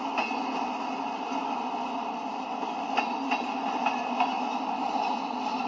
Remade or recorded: recorded